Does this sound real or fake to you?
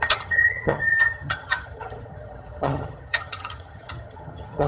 fake